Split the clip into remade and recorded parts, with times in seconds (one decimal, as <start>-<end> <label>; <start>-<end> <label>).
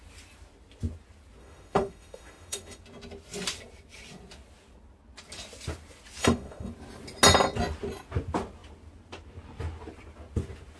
0.0-1.4 recorded; 1.4-2.8 remade; 2.8-6.2 recorded; 6.2-6.7 remade; 6.7-10.8 recorded